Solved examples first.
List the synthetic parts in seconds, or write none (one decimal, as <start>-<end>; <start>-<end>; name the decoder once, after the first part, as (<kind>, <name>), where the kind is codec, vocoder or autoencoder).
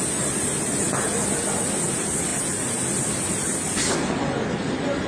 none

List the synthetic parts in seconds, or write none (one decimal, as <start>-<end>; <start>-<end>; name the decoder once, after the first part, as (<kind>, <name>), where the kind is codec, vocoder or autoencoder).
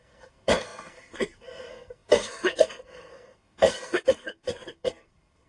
0.0-5.5 (codec, SNAC)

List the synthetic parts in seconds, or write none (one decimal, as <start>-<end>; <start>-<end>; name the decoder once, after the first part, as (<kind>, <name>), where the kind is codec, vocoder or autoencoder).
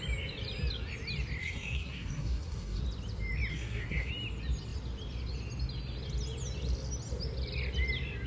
1.4-2.8 (codec, SNAC); 3.5-4.1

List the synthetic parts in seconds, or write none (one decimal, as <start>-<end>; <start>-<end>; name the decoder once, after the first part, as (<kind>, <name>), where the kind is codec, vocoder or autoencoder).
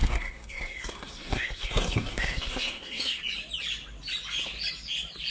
0.0-3.2 (codec, SNAC)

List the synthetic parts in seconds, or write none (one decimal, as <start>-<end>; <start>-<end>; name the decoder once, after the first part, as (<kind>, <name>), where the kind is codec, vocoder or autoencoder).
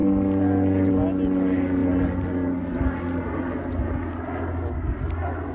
none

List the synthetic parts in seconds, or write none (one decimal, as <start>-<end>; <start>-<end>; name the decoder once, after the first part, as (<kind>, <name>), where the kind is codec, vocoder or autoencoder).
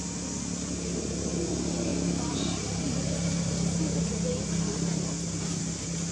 none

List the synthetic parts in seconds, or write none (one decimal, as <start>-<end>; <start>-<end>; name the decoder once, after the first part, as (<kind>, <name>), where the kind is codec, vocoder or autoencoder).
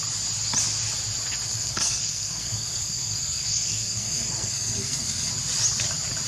1.5-5.3 (codec, SNAC)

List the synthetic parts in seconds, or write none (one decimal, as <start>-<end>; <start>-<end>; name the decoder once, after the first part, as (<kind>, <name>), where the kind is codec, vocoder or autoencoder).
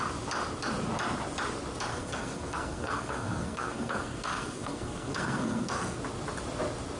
1.9-6.0 (codec, SNAC)